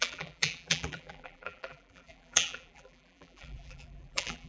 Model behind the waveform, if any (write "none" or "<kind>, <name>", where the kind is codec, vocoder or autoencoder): vocoder, BigVGAN v2